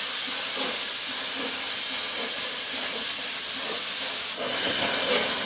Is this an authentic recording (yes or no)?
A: yes